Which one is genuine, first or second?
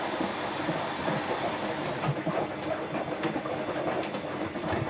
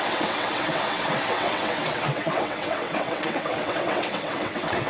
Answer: first